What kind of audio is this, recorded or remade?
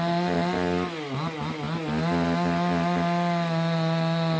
recorded